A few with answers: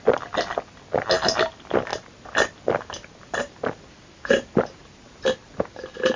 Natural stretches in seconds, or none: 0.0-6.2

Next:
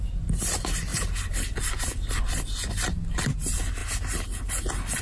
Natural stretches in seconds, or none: 0.0-5.0

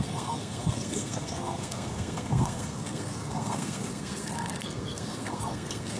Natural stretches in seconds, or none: none

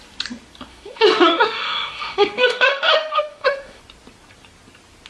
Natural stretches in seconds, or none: 0.0-0.7; 3.8-5.1

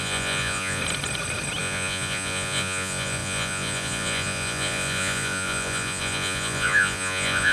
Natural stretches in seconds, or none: 0.8-1.6

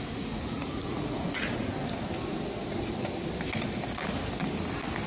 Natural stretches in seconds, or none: 1.7-5.1